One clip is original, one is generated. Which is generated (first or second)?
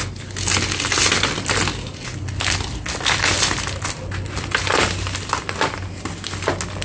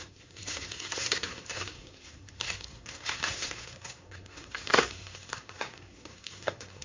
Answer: second